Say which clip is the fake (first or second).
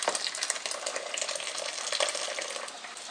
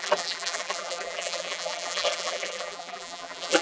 second